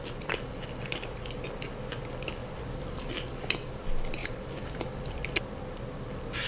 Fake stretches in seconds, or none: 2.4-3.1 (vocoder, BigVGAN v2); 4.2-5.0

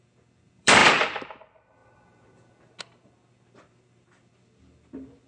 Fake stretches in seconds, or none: 0.0-1.8 (vocoder, BigVGAN v2); 2.8-5.3